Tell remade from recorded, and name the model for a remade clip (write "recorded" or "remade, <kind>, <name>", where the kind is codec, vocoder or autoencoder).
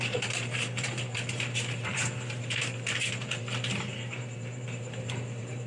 remade, vocoder, BigVGAN v2